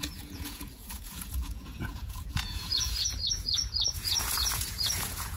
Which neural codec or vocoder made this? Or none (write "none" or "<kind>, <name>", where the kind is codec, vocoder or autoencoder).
vocoder, Vocos